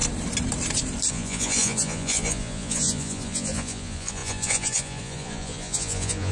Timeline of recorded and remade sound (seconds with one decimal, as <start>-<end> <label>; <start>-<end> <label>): 0.0-1.1 recorded; 1.1-6.3 remade